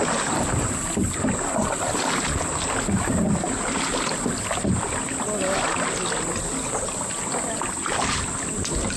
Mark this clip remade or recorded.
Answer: recorded